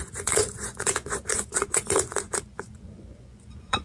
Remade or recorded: remade